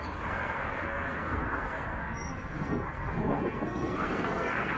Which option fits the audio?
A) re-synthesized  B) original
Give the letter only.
A